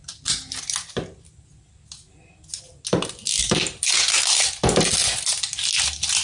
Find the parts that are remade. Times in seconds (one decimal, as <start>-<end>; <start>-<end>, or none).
3.4-4.5